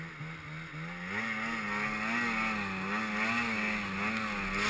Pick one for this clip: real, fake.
real